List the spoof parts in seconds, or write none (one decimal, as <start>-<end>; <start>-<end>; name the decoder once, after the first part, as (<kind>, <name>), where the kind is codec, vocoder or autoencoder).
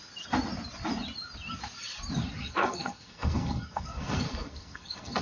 2.4-5.2 (codec, SNAC)